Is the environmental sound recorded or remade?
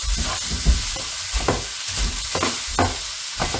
recorded